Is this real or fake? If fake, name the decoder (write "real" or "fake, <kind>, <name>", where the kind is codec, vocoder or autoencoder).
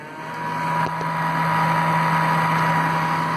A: real